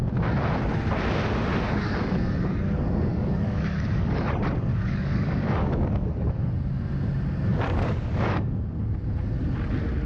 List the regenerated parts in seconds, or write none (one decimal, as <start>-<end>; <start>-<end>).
3.1-4.3; 4.7-6.5; 7.5-8.5